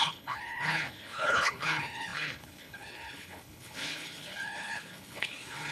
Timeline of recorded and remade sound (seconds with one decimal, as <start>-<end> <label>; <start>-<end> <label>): 0.0-5.7 remade